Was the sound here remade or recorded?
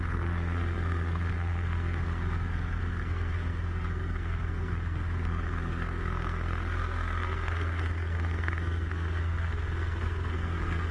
remade